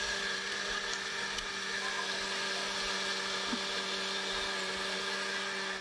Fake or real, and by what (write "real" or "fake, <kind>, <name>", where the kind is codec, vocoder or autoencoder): real